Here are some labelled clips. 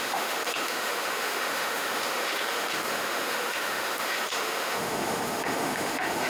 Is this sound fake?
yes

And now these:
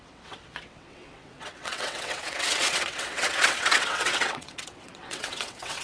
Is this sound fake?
yes